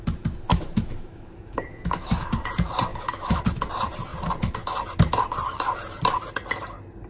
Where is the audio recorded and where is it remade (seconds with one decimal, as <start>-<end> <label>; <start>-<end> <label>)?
0.0-0.5 recorded; 0.5-2.5 remade; 2.5-2.9 recorded; 2.9-3.4 remade; 3.4-7.1 recorded